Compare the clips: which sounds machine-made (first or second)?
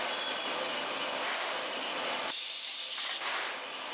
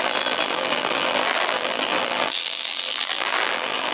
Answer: second